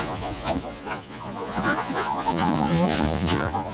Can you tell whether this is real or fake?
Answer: fake